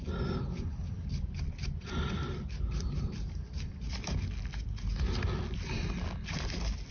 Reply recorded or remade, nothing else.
recorded